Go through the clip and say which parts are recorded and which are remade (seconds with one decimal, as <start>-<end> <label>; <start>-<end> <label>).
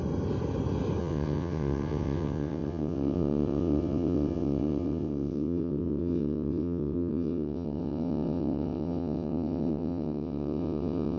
0.0-1.0 recorded; 1.0-11.2 remade